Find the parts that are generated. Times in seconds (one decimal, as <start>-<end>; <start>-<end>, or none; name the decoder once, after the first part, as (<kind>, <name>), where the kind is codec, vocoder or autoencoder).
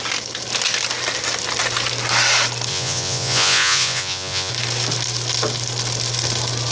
2.7-4.5 (vocoder, Vocos)